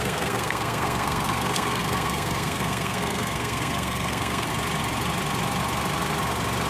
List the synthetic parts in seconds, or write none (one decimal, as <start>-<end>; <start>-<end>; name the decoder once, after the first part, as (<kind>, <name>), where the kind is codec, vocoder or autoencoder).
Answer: 0.0-4.5 (codec, SNAC)